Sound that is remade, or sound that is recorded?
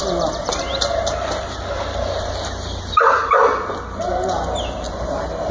recorded